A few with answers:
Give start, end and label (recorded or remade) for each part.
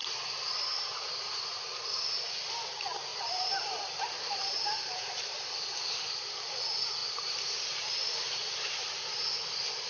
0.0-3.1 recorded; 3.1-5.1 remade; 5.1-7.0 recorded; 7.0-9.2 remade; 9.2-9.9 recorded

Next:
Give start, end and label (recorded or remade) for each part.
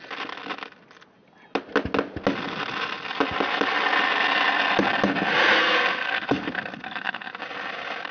0.0-5.6 recorded; 5.6-7.4 remade; 7.4-8.1 recorded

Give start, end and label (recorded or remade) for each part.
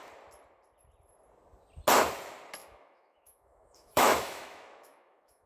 0.0-2.6 recorded; 2.6-5.5 remade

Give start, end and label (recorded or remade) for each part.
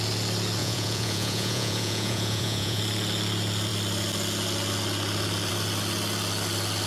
0.0-0.6 recorded; 0.6-2.8 remade; 2.8-6.9 recorded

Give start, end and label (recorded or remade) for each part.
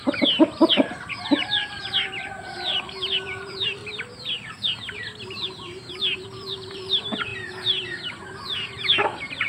0.0-0.6 recorded; 0.6-3.8 remade; 3.8-5.9 recorded; 5.9-7.3 remade; 7.3-8.2 recorded; 8.2-9.5 remade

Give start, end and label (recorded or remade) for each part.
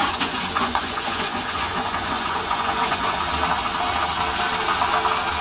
0.0-3.2 remade; 3.2-5.4 recorded